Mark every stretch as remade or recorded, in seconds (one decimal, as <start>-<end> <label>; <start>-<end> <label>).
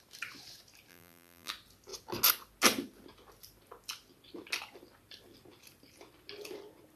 0.0-0.9 recorded; 0.9-1.5 remade; 1.5-7.0 recorded